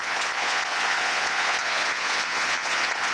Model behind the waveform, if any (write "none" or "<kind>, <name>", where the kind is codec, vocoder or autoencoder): vocoder, Vocos